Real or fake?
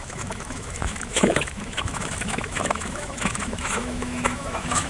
fake